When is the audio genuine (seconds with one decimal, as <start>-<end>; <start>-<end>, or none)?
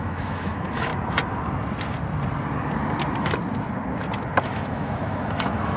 0.9-4.4